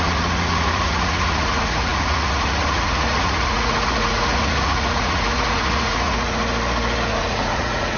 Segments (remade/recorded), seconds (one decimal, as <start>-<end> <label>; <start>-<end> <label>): 0.0-6.4 remade; 6.4-7.1 recorded; 7.1-8.0 remade